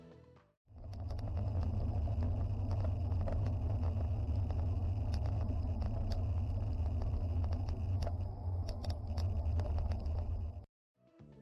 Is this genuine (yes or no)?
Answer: yes